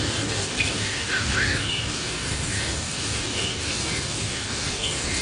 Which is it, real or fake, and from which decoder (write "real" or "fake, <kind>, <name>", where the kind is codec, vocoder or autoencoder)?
fake, codec, DAC